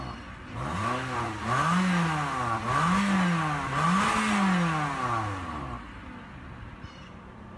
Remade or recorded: recorded